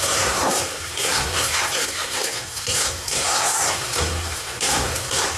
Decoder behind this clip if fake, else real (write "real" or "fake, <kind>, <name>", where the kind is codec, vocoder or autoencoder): fake, codec, SNAC